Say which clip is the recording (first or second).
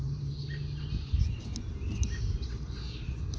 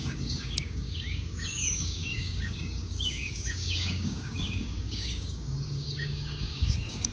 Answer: first